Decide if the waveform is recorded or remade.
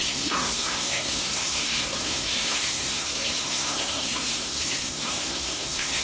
remade